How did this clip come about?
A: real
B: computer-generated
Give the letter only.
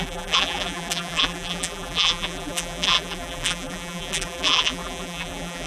B